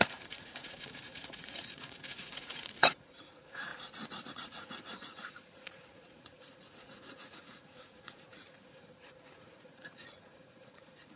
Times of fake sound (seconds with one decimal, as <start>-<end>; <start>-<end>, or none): 0.0-3.7; 4.3-11.2